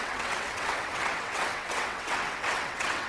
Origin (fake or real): fake